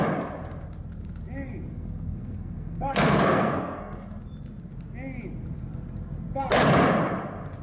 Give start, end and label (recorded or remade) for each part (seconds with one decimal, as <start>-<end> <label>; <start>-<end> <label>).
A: 0.0-1.7 recorded; 1.7-4.2 remade; 4.2-7.6 recorded